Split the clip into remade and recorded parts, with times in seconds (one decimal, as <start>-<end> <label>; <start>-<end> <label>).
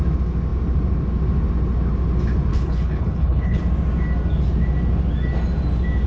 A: 0.0-2.5 recorded; 2.5-3.6 remade; 3.6-6.1 recorded